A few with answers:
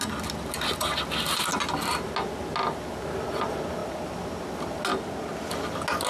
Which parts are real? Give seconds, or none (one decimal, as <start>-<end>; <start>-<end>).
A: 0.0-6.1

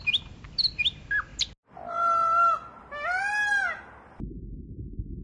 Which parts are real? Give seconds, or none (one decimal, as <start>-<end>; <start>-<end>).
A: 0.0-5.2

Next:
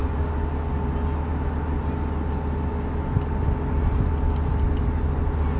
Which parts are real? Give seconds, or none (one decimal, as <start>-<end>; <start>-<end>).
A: 0.0-5.6

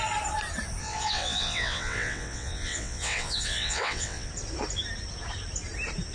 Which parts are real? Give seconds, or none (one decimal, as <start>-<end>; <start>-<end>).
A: 0.0-0.8; 4.3-6.1

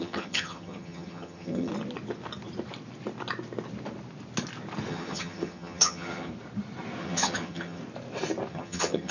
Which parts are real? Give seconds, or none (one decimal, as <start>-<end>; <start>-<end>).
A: 1.7-4.9; 6.3-7.0; 7.8-8.5